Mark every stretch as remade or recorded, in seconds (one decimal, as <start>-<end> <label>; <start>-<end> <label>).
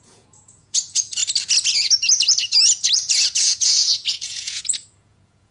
0.0-1.2 remade; 1.2-3.4 recorded; 3.4-5.5 remade